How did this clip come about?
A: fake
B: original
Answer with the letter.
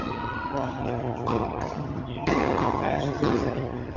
A